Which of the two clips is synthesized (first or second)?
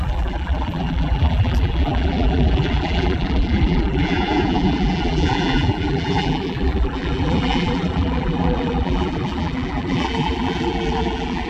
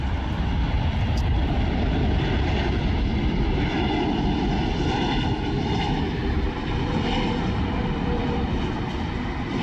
first